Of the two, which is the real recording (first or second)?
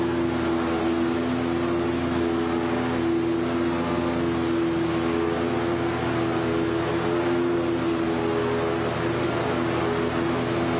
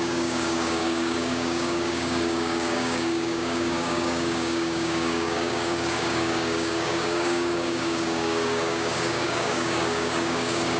first